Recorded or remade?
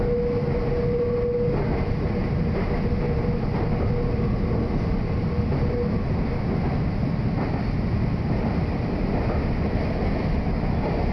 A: recorded